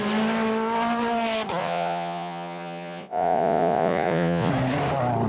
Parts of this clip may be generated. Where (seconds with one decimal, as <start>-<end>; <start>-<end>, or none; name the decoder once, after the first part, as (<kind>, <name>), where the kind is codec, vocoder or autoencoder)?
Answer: 1.6-4.5 (vocoder, Vocos)